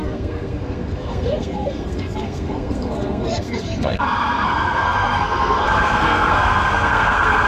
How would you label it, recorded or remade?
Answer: remade